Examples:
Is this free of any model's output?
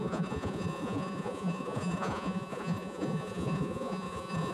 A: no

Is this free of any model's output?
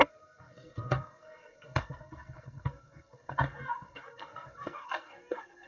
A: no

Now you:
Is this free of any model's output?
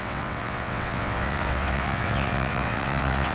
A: no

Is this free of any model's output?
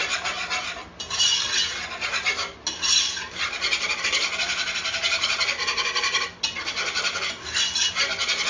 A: yes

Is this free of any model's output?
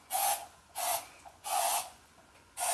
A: no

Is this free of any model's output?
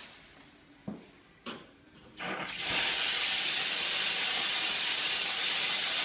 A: yes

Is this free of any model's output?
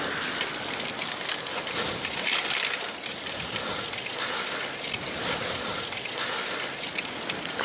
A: yes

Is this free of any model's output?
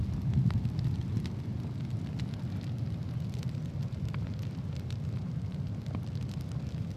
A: yes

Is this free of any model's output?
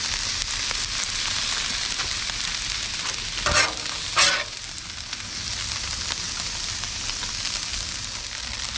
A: yes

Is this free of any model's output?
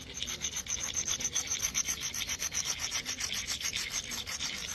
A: yes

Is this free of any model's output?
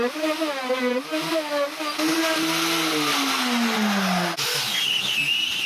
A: yes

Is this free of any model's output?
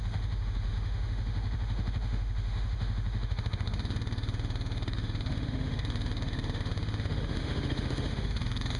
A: no